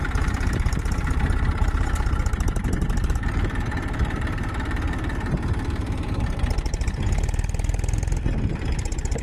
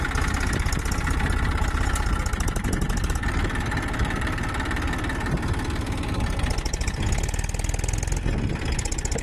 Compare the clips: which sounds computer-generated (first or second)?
first